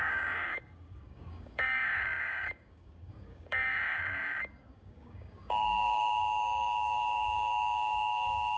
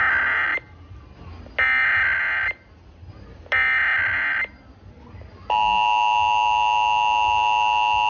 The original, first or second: second